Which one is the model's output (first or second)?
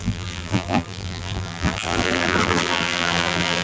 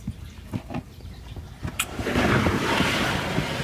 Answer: first